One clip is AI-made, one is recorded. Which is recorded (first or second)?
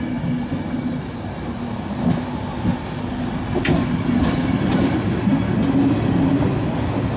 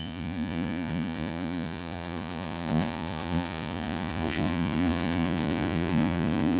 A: first